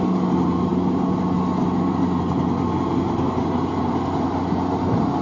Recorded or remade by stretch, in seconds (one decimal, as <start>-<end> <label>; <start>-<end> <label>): 0.0-5.2 recorded